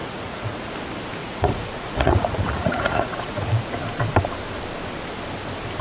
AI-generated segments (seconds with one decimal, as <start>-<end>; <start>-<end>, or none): 0.0-0.7; 1.2-3.6